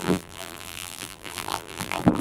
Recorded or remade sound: remade